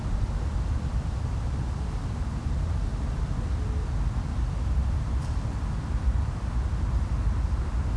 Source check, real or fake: real